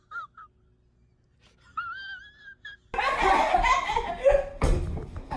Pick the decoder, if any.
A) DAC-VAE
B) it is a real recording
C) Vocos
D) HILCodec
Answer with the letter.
B